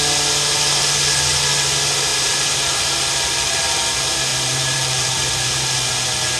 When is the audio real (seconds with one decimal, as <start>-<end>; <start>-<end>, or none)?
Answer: 0.0-2.1; 2.8-4.3; 5.9-6.4